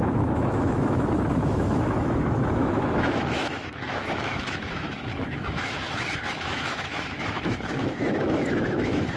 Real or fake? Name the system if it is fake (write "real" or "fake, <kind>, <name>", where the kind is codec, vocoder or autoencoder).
fake, autoencoder, DAC-VAE